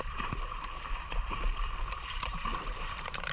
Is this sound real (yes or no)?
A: no